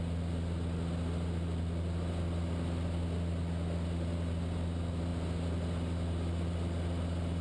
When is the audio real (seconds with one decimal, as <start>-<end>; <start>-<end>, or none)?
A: 0.0-7.4